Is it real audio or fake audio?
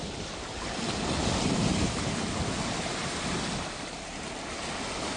real